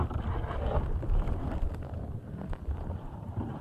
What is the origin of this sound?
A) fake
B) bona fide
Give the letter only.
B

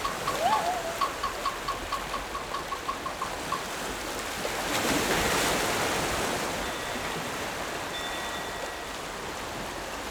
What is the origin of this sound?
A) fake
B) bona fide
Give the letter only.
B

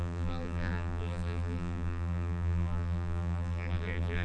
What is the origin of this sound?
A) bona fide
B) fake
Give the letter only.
B